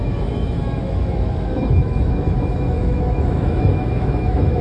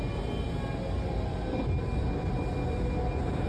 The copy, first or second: first